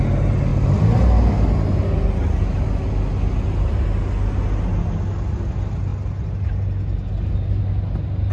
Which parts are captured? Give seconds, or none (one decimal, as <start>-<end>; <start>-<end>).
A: 0.0-8.3